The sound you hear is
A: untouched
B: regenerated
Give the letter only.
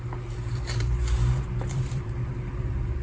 B